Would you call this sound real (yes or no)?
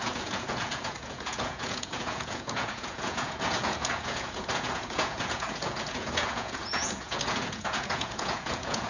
no